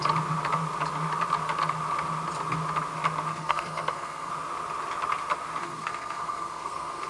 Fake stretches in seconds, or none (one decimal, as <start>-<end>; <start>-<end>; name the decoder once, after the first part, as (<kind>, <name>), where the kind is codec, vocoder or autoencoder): 3.3-4.3 (codec, SNAC); 5.6-7.1